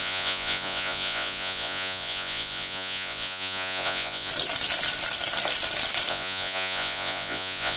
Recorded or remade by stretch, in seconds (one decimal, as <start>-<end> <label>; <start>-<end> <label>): 0.0-4.3 remade; 4.3-6.1 recorded; 6.1-7.8 remade